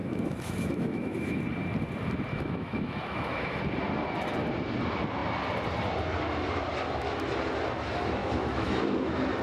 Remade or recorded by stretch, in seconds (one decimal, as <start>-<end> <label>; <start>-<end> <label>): 0.0-1.4 remade; 1.4-2.3 recorded; 2.3-3.6 remade; 3.6-8.2 recorded; 8.2-8.8 remade; 8.8-9.4 recorded